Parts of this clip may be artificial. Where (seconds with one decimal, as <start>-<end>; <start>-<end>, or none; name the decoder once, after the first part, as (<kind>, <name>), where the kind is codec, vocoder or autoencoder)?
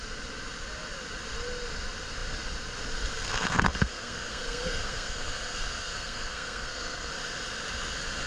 3.1-7.1 (codec, SNAC)